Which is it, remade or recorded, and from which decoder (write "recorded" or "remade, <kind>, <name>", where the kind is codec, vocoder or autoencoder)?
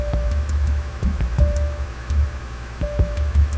remade, autoencoder, DAC-VAE